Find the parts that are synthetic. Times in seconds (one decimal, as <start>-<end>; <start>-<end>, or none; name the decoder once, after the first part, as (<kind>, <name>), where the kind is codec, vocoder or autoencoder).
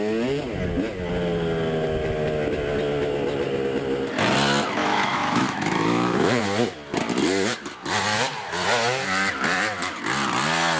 4.8-6.4 (autoencoder, DAC-VAE)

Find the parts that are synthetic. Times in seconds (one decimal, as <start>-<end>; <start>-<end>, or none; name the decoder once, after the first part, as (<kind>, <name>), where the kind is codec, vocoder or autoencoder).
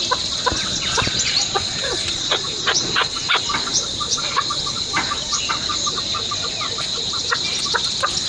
0.6-5.4 (vocoder, Vocos)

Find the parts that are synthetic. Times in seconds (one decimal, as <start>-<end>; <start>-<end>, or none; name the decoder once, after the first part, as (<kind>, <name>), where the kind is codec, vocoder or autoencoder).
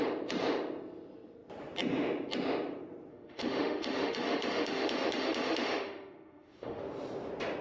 3.1-6.8 (autoencoder, DAC-VAE)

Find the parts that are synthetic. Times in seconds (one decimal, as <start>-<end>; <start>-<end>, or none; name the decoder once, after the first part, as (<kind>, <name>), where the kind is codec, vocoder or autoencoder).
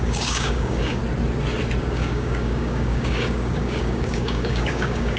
0.0-1.0 (codec, DAC); 1.8-5.2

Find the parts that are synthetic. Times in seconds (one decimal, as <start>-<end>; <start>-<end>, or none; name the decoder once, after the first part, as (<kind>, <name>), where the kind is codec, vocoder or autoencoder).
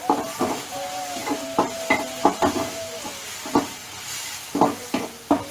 none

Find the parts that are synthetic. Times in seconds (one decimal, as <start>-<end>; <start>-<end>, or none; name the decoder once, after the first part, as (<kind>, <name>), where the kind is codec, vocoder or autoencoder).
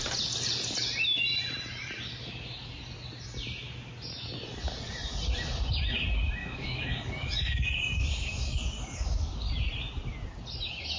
6.4-9.5 (codec, DAC)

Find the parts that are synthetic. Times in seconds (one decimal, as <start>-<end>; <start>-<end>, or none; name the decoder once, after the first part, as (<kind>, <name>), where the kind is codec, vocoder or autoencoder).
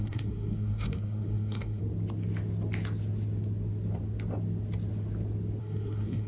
0.0-1.8 (codec, SNAC); 5.6-6.3